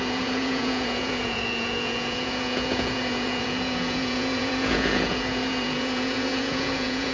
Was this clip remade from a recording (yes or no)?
yes